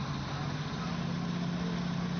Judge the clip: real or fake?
real